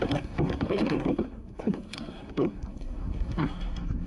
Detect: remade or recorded remade